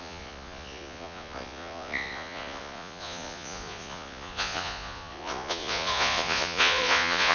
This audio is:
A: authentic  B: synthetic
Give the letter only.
B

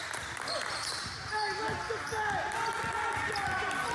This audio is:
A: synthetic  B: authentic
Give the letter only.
B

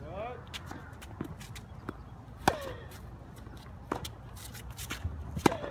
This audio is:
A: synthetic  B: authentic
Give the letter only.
B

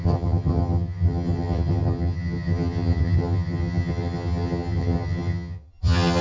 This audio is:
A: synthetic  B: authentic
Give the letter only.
A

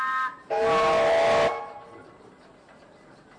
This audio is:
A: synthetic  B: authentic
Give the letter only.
B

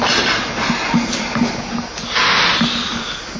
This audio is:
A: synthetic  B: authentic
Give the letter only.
B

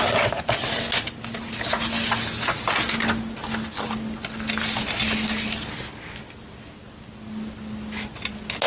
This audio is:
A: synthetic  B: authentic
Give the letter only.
B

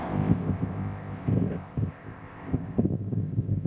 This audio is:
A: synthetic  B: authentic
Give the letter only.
A